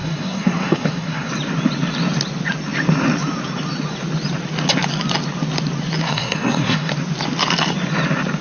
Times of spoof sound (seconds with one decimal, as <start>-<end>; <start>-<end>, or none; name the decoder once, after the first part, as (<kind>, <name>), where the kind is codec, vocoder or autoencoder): 0.0-1.3 (codec, SNAC); 6.0-6.9